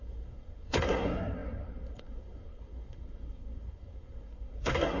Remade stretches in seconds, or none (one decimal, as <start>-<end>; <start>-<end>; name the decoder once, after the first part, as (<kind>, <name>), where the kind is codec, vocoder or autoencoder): 0.0-5.0 (codec, SNAC)